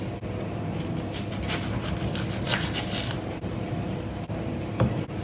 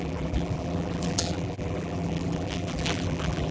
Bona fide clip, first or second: first